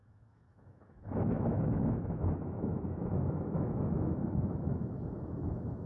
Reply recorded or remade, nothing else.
remade